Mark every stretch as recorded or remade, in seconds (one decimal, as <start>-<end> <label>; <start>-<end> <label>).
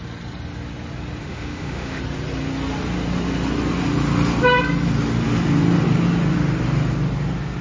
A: 0.0-1.2 recorded; 1.2-2.0 remade; 2.0-7.6 recorded